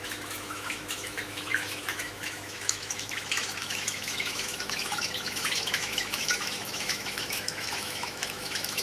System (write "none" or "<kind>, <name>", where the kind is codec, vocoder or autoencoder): autoencoder, DAC-VAE